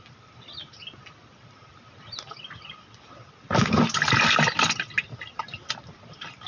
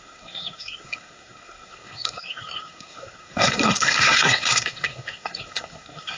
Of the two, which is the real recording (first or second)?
first